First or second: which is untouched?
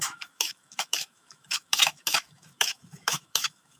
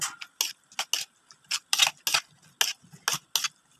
second